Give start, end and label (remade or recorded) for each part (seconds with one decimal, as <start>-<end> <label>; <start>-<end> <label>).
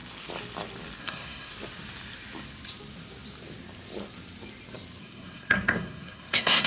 0.0-1.0 recorded; 1.0-1.5 remade; 1.5-5.0 recorded; 5.0-6.7 remade